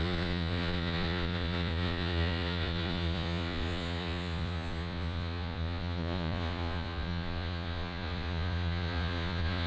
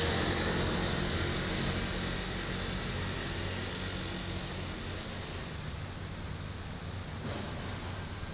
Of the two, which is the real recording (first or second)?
second